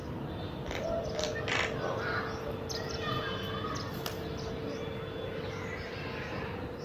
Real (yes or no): yes